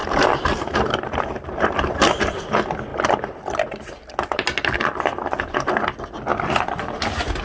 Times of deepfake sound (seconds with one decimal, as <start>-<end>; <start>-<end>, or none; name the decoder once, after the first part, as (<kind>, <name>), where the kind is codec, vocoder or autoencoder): 0.0-2.2 (vocoder, BigVGAN v2)